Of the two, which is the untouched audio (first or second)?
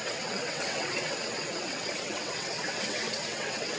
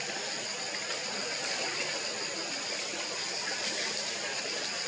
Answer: second